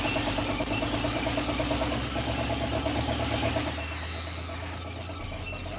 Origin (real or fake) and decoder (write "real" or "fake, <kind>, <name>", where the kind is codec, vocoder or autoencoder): real